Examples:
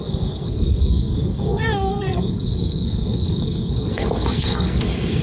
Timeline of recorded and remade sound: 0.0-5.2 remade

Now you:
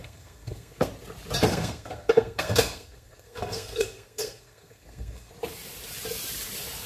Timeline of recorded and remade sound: 0.0-0.9 remade; 0.9-1.5 recorded; 1.5-5.3 remade; 5.3-6.9 recorded

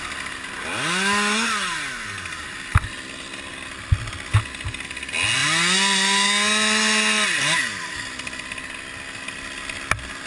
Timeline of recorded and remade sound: 0.0-10.3 recorded

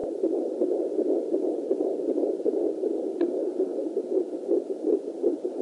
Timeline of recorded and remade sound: 0.0-1.2 recorded; 1.2-3.4 remade; 3.4-4.1 recorded; 4.1-5.6 remade

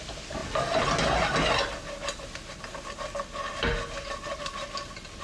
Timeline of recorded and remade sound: 0.0-5.2 recorded

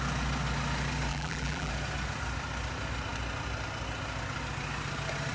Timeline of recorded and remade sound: 0.0-1.1 recorded; 1.1-1.7 remade; 1.7-5.3 recorded

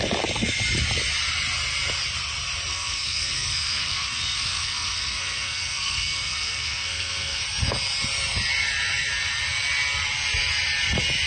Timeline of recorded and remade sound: 0.0-2.7 recorded; 2.7-7.4 remade; 7.4-11.3 recorded

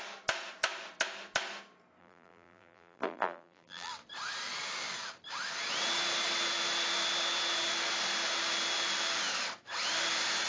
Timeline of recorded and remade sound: 0.0-2.0 recorded; 2.0-3.9 remade; 3.9-10.5 recorded